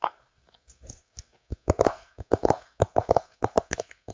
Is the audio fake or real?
fake